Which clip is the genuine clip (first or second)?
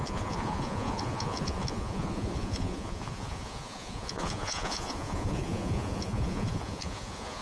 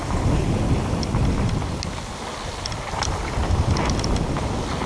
second